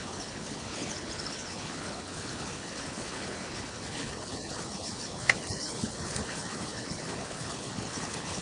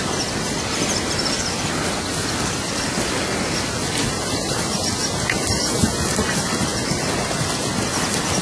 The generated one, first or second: first